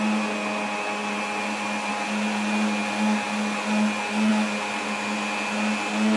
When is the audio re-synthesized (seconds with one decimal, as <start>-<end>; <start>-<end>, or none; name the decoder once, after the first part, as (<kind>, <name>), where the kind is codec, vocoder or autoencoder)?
none

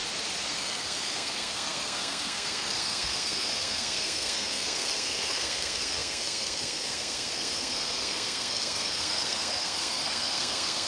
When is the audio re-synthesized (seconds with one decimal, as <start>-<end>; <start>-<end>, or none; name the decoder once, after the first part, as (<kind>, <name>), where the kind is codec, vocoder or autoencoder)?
0.5-10.9 (codec, SNAC)

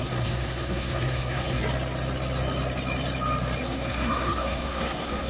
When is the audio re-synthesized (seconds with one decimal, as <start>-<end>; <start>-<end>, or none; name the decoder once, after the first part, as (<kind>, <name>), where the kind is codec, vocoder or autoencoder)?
0.0-1.6 (codec, SNAC); 3.6-5.3

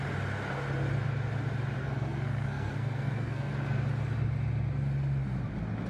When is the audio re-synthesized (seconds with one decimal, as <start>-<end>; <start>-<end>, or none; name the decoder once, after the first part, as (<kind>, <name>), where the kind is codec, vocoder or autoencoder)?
1.8-3.5 (codec, SNAC)

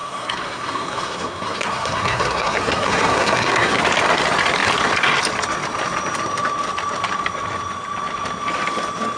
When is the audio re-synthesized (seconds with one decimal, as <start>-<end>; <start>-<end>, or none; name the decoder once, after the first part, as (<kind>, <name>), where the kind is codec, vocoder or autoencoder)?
0.0-3.8 (codec, SNAC)

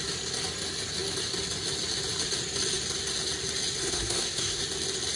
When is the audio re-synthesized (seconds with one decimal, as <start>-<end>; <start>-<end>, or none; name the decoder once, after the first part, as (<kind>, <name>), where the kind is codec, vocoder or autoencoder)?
3.8-4.6 (codec, SNAC)

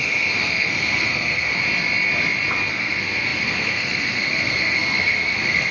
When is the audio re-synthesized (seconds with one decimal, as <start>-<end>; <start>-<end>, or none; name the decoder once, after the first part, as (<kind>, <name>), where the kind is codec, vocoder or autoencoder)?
0.0-1.5 (codec, SNAC); 2.7-5.7

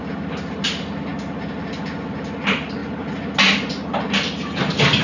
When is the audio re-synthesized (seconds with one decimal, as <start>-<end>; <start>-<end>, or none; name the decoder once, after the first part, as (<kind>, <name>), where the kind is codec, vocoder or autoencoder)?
none